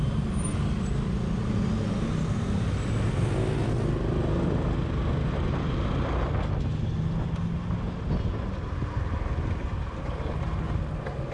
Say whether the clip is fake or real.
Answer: real